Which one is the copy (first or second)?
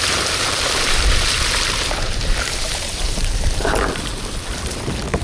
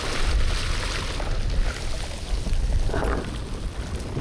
first